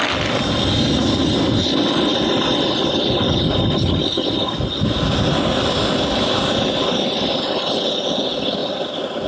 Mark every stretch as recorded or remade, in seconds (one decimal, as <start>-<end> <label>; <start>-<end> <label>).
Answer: 0.0-9.3 recorded